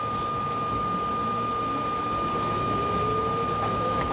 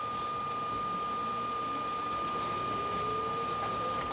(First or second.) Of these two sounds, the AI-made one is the first